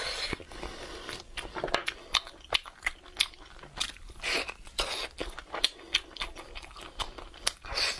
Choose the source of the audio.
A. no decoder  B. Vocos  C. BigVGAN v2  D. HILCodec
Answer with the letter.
A